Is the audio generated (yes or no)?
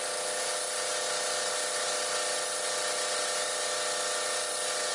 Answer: no